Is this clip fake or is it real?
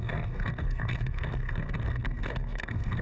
fake